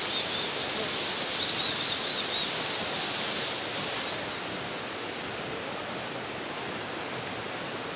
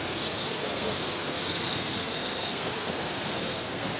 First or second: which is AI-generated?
second